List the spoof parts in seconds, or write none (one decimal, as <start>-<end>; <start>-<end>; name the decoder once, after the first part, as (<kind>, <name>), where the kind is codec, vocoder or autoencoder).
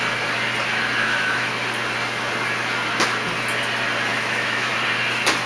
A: 1.0-1.5 (autoencoder, DAC-VAE); 4.1-4.7